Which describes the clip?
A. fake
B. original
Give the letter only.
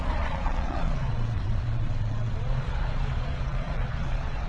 A